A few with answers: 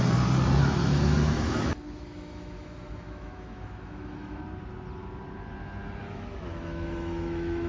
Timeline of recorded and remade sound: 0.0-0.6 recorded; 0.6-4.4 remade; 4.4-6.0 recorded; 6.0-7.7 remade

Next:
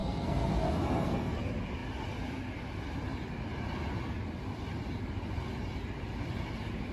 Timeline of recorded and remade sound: 0.0-1.4 remade; 1.4-6.9 recorded

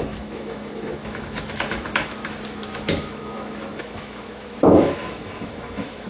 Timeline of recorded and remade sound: 0.0-6.1 remade